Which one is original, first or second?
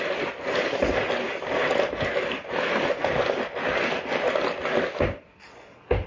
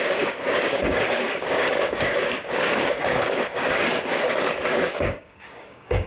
first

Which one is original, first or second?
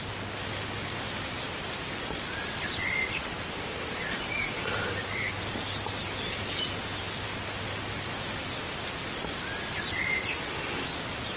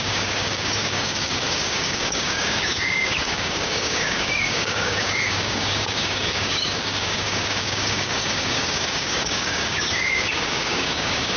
first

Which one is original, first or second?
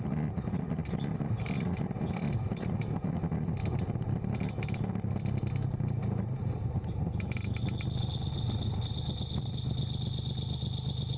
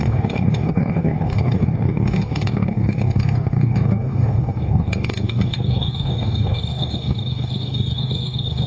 first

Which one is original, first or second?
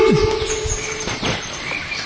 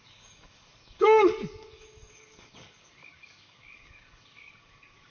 first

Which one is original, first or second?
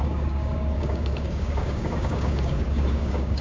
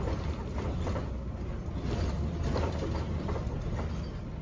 second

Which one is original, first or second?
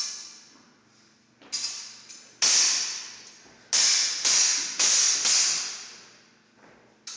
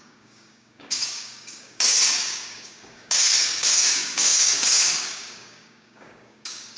first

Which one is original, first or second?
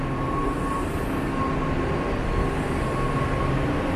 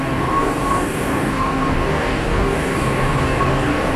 first